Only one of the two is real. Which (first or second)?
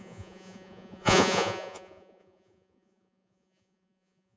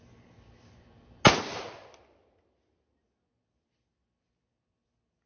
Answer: second